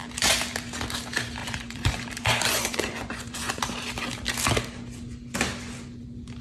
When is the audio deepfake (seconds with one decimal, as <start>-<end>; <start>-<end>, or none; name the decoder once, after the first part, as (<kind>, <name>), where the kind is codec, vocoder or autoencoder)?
1.4-2.1 (vocoder, Vocos); 2.5-3.6